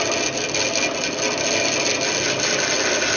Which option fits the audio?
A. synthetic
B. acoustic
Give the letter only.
B